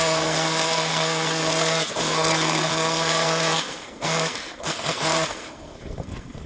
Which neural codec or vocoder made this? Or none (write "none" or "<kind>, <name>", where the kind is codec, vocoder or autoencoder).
codec, SNAC